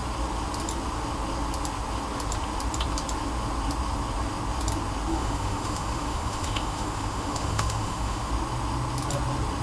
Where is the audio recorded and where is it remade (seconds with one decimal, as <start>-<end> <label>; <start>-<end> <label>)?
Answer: 0.0-5.1 recorded; 5.1-8.3 remade; 8.3-9.6 recorded